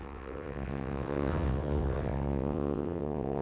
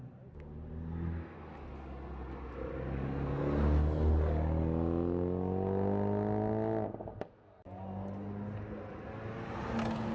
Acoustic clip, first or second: second